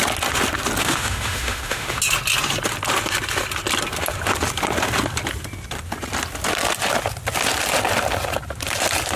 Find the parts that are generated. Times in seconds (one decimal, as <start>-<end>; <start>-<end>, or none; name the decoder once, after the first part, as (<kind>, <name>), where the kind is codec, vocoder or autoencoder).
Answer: 0.8-2.0 (autoencoder, DAC-VAE)